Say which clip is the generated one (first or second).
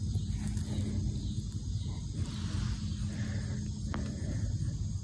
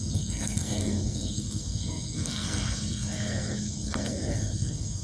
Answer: second